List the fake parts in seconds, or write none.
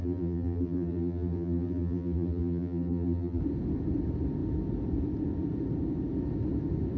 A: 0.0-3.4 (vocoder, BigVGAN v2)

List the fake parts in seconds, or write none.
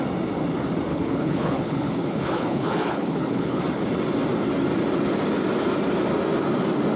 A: 0.9-3.6 (codec, HILCodec)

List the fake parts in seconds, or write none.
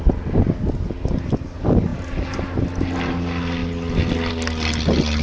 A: none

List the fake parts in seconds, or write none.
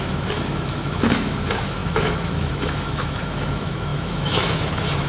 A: 0.0-5.1 (autoencoder, DAC-VAE)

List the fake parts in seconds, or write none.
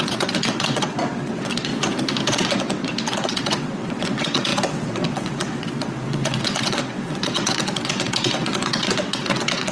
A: 0.0-1.7 (vocoder, WaveNeXt); 2.3-9.7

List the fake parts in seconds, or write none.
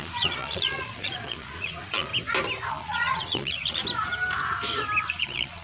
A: 0.0-2.1 (vocoder, Vocos); 2.7-3.8; 5.1-5.6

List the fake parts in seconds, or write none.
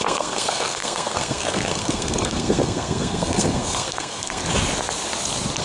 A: 0.0-4.4 (codec, SNAC)